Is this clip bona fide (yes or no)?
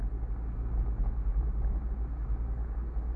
yes